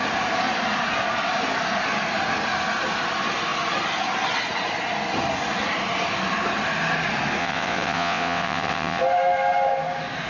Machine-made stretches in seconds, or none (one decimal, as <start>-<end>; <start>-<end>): 7.4-9.0